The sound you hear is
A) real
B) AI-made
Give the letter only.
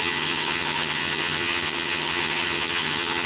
B